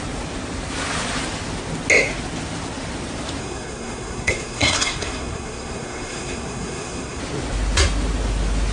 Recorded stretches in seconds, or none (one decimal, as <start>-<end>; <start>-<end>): 0.0-3.4; 7.2-8.7